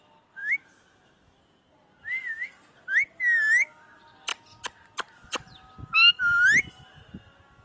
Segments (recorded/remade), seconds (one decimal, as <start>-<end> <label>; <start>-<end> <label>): 0.0-0.4 recorded; 0.4-1.4 remade; 1.4-7.6 recorded